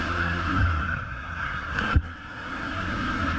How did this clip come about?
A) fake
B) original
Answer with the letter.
A